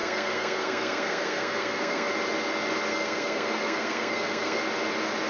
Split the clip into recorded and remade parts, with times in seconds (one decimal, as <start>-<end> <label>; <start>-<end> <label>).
0.0-2.1 remade; 2.1-2.9 recorded; 2.9-4.6 remade; 4.6-5.3 recorded